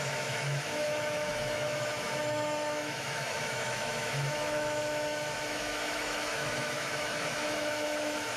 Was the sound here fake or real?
fake